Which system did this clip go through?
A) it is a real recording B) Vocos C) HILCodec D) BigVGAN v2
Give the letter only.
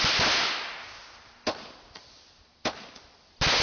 A